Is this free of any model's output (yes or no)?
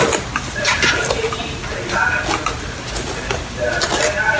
yes